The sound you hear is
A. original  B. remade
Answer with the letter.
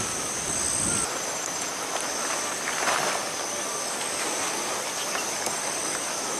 A